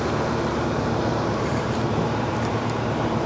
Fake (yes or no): yes